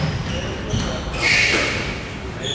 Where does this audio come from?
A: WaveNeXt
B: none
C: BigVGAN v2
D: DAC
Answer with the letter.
B